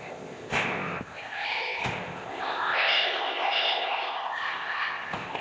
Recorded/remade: remade